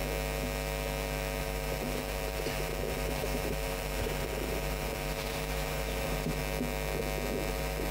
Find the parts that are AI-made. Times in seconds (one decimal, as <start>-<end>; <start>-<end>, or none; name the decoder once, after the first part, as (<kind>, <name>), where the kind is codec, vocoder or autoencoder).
1.4-6.4 (vocoder, BigVGAN v2); 7.5-7.9